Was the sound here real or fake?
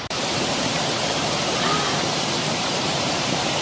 fake